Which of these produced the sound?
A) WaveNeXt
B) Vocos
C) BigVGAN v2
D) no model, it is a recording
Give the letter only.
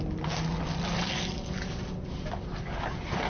D